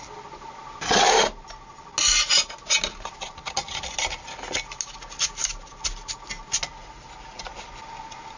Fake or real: real